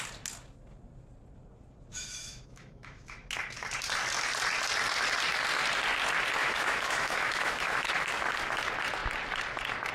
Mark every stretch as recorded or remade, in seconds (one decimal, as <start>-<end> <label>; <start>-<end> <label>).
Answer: 0.0-1.9 recorded; 1.9-3.2 remade; 3.2-6.4 recorded; 6.4-7.9 remade; 7.9-9.9 recorded